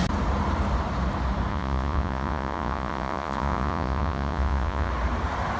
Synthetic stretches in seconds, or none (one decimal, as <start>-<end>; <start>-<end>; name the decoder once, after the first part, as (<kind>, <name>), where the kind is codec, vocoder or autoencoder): 1.5-4.9 (vocoder, Vocos)